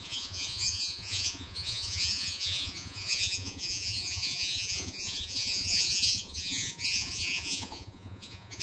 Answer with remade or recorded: remade